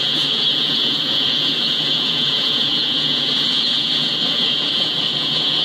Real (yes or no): no